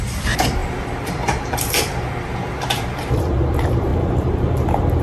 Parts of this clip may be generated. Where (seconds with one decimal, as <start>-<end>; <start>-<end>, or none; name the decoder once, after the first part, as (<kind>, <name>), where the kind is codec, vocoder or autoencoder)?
0.0-3.9 (vocoder, BigVGAN v2)